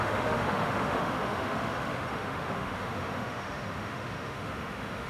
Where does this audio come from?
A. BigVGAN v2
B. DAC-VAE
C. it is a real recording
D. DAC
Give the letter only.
B